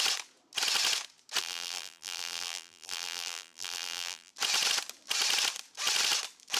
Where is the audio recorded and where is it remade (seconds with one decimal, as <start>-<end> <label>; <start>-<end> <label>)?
0.0-1.4 recorded; 1.4-4.3 remade; 4.3-6.6 recorded

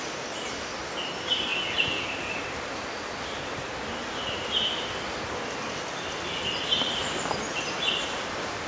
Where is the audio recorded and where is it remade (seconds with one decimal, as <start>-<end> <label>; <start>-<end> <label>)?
0.0-7.0 recorded; 7.0-8.0 remade; 8.0-8.7 recorded